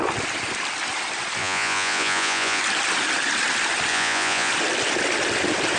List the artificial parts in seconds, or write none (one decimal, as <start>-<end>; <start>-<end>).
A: 1.4-2.6; 3.9-4.5